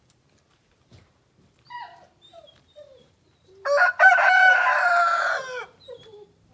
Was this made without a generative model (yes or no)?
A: no